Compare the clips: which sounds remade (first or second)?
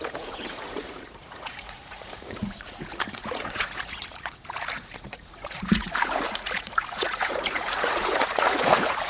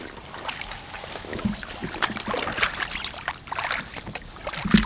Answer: first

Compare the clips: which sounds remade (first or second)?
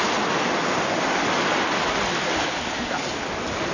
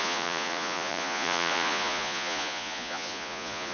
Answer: second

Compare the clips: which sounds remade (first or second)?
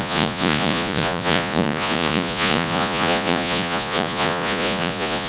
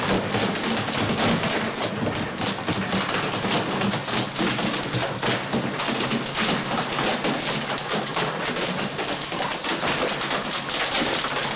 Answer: first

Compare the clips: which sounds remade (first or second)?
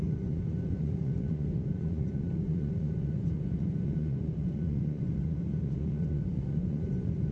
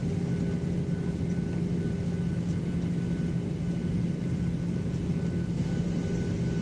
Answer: first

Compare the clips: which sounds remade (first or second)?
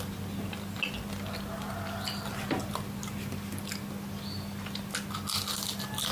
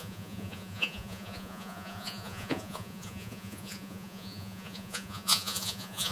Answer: second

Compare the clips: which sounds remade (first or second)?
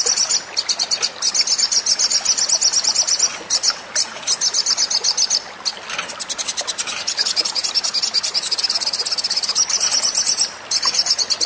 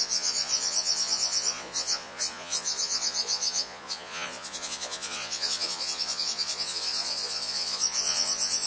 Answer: second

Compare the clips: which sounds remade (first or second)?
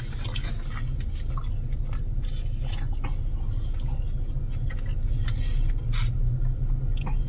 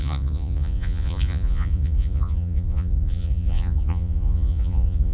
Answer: second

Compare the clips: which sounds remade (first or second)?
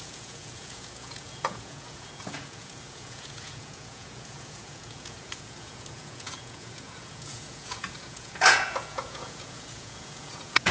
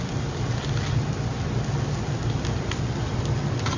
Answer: first